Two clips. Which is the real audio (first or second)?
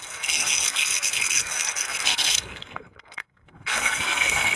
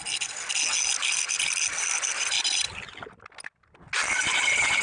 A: second